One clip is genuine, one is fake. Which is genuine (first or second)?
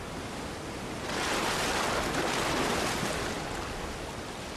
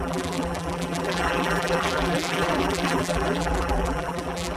first